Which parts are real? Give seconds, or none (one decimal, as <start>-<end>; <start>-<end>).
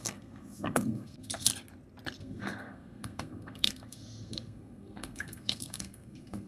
1.5-2.2